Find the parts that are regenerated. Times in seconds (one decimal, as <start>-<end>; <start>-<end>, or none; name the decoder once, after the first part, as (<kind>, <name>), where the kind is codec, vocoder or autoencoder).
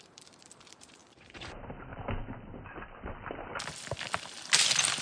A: 0.0-1.9 (vocoder, BigVGAN v2)